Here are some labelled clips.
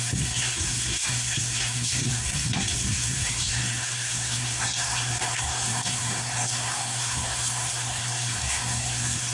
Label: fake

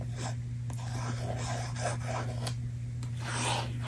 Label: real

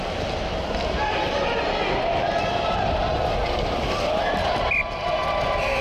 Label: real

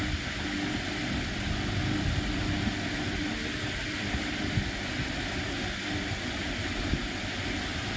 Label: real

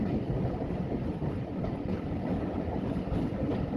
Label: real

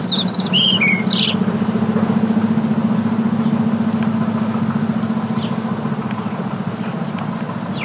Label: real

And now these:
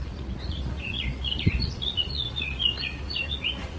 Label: fake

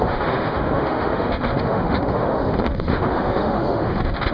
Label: fake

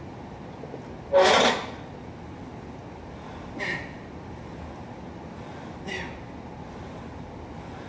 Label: real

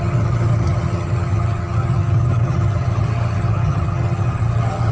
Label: fake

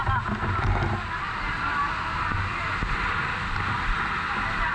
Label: real